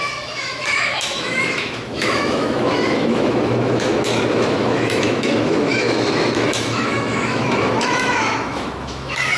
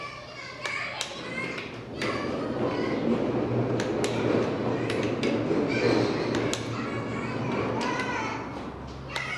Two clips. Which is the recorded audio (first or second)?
second